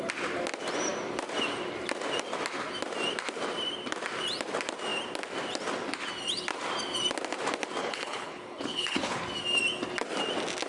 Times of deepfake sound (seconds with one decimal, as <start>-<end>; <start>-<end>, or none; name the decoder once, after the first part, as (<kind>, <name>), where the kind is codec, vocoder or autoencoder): 7.8-9.2 (codec, HILCodec)